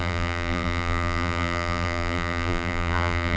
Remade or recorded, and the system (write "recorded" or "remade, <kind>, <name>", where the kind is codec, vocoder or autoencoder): remade, vocoder, BigVGAN v2